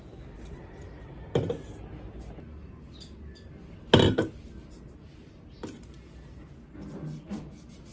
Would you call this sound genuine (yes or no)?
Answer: yes